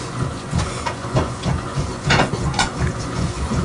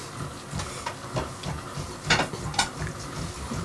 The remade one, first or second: first